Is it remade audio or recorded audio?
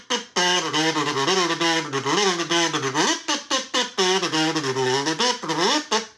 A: recorded